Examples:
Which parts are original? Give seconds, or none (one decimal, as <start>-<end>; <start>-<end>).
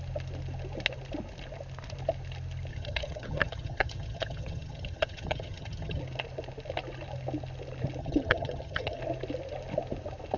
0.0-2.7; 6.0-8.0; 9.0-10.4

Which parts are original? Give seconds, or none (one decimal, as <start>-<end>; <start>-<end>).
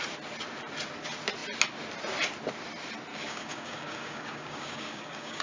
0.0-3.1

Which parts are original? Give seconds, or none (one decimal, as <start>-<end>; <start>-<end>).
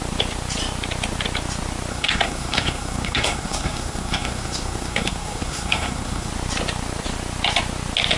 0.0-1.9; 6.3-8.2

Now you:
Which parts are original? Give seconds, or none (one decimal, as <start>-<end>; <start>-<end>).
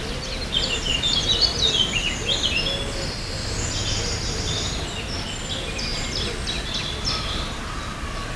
0.0-0.9; 1.6-8.4